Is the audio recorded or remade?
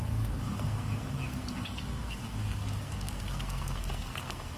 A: remade